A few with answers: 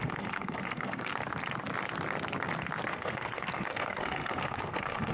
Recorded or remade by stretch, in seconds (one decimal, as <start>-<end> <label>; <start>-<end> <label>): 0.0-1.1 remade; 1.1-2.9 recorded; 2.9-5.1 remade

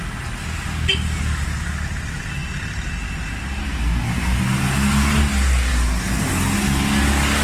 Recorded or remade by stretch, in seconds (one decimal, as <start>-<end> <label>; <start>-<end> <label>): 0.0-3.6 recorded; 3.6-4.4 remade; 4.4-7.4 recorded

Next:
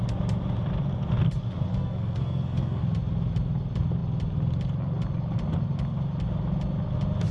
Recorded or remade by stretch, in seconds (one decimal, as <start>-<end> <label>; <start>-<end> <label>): 0.0-1.7 recorded; 1.7-2.8 remade; 2.8-7.3 recorded